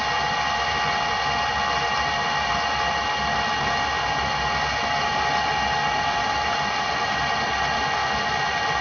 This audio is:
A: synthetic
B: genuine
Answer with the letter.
B